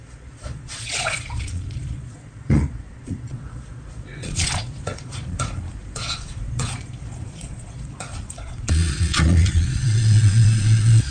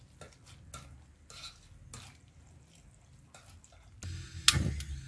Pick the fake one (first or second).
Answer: first